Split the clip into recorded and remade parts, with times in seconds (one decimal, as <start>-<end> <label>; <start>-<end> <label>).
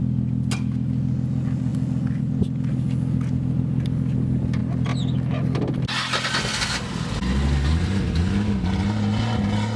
0.0-9.8 recorded